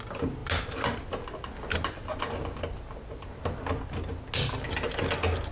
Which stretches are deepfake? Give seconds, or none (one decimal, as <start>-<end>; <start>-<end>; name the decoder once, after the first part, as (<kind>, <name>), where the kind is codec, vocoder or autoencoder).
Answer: none